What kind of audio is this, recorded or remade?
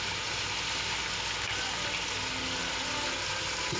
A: recorded